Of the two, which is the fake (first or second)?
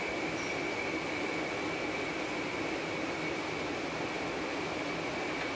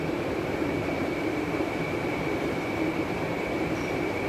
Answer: second